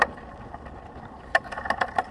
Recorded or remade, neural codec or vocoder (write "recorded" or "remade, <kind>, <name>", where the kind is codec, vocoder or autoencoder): recorded